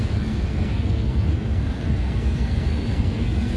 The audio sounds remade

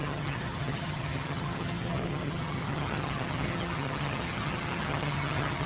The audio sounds remade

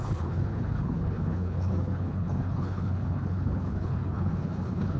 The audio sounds remade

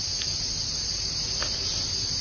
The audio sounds recorded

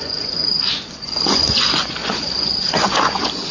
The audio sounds remade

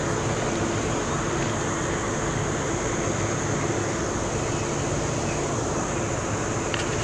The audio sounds recorded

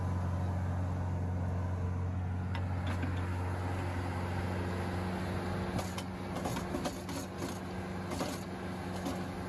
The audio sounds recorded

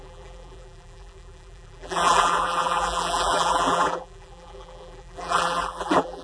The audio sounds remade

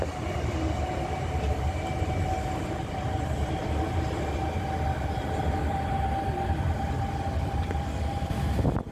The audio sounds recorded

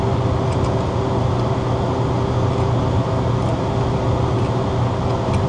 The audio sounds recorded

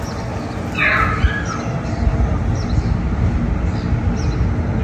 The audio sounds recorded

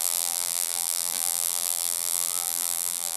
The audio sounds remade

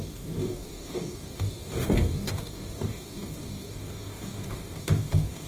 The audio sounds remade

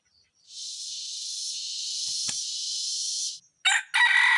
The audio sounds recorded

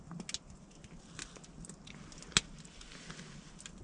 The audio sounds recorded